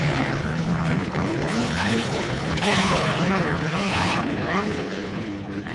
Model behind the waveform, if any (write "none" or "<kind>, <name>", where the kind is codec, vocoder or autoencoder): codec, HILCodec